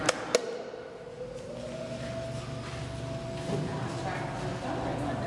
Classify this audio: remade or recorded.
recorded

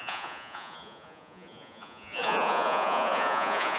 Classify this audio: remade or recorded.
remade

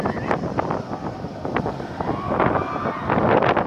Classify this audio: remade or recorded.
recorded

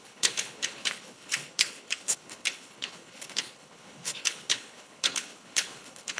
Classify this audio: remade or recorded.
remade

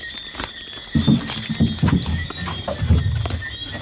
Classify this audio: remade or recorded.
recorded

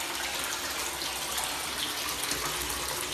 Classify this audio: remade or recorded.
recorded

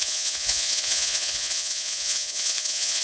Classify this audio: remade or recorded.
remade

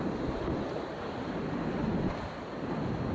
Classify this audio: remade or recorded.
recorded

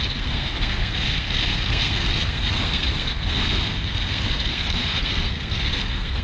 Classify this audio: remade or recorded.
remade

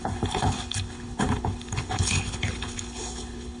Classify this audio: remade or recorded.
remade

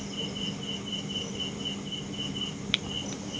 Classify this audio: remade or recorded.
recorded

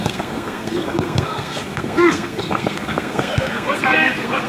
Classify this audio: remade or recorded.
remade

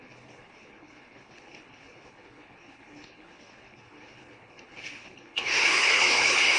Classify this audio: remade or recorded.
remade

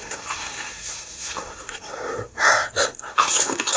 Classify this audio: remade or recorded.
remade